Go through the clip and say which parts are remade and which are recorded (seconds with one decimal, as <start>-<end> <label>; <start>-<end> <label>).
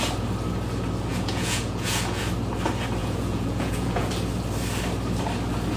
0.0-1.1 recorded; 1.1-2.2 remade; 2.2-3.0 recorded; 3.0-4.1 remade; 4.1-5.8 recorded